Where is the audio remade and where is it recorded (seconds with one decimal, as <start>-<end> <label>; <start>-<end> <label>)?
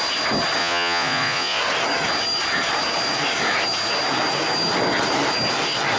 0.0-0.6 recorded; 0.6-1.6 remade; 1.6-6.0 recorded